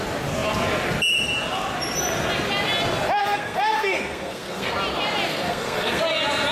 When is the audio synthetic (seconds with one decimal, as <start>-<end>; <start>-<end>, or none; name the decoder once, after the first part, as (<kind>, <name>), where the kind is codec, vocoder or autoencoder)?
3.2-4.7 (codec, SNAC); 5.3-6.0